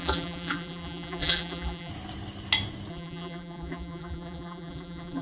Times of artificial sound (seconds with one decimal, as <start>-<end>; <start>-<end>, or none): 0.0-1.9; 2.9-5.2

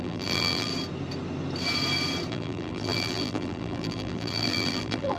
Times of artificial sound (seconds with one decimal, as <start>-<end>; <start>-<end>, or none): 0.0-0.7; 2.3-5.2

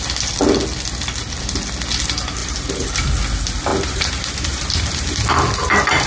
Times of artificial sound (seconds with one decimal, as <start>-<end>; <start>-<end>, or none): 2.4-2.9; 3.7-5.2

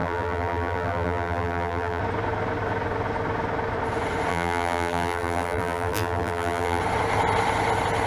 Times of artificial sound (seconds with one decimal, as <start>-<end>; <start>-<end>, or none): 0.0-2.0; 4.3-6.8

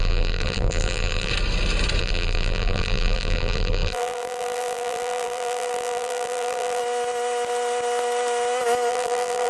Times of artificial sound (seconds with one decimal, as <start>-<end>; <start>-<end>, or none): 0.0-1.3; 2.0-6.8; 8.9-9.5